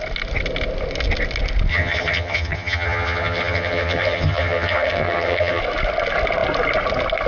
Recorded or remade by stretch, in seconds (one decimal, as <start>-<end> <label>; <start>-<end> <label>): 0.0-1.7 recorded; 1.7-5.6 remade; 5.6-7.3 recorded